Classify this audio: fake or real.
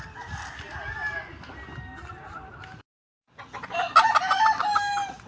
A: real